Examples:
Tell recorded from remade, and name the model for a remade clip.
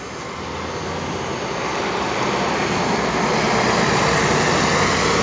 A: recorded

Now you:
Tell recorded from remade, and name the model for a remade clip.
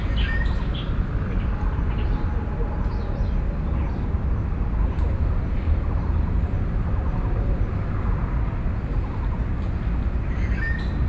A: recorded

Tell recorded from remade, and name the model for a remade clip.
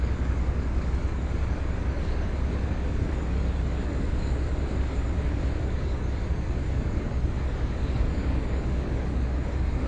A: remade, codec, DAC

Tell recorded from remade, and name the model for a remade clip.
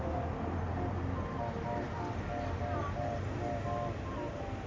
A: recorded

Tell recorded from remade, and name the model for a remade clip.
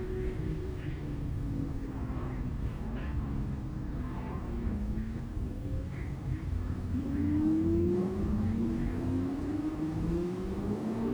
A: remade, codec, DAC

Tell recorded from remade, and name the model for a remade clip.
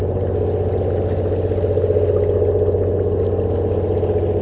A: recorded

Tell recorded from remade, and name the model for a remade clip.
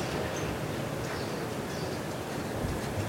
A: recorded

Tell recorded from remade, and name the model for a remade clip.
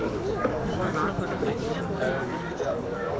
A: remade, codec, DAC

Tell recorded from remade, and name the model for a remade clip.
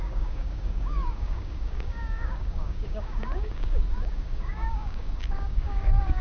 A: remade, codec, DAC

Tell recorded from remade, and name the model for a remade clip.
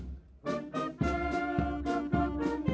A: recorded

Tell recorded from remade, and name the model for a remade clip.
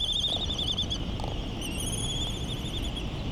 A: recorded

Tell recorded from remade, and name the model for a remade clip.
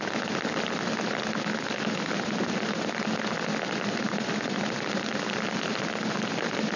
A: recorded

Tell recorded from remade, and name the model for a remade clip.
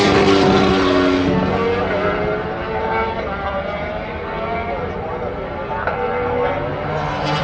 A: recorded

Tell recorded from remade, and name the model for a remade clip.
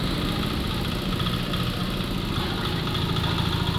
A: recorded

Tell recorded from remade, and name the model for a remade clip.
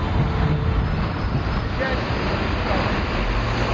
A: recorded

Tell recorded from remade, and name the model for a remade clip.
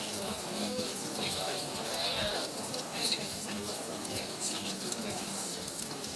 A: remade, codec, DAC